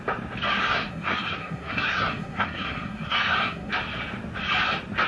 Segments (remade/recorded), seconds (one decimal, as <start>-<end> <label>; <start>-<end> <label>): 0.0-0.6 recorded; 0.6-3.7 remade; 3.7-5.1 recorded